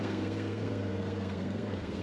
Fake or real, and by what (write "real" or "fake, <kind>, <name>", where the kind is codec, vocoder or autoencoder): fake, codec, SNAC